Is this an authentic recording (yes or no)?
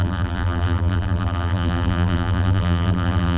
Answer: no